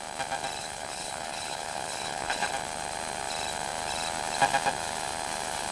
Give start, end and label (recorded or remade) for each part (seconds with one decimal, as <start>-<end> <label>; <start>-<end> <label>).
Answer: 0.0-0.6 recorded; 0.6-2.5 remade; 2.5-5.7 recorded